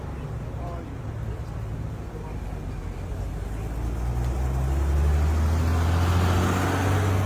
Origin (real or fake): real